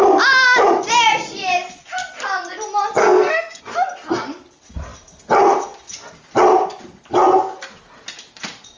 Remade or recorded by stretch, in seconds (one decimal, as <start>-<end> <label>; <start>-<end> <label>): 0.0-3.0 recorded; 3.0-3.6 remade; 3.6-8.8 recorded